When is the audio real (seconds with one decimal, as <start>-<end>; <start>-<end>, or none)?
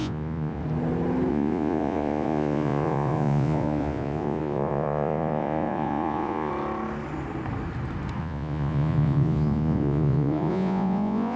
0.6-1.3; 6.5-8.2